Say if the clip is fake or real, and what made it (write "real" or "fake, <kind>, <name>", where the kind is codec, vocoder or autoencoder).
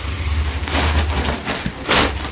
real